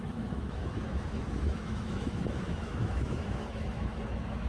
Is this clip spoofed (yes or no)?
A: yes